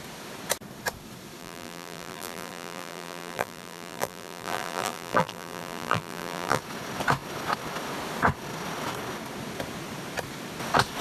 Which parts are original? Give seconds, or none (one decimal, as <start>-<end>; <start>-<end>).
0.0-1.4; 6.6-11.0